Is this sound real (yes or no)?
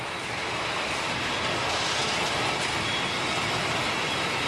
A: yes